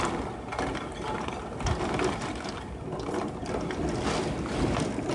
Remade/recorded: recorded